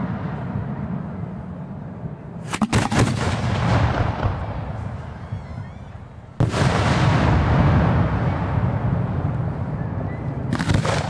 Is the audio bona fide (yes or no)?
yes